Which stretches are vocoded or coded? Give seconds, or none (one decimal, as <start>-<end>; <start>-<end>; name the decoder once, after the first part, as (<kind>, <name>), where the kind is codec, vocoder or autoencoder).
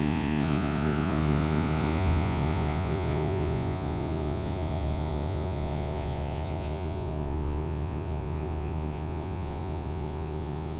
0.0-10.8 (vocoder, Vocos)